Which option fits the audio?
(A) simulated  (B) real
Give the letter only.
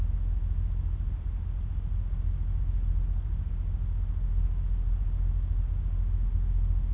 B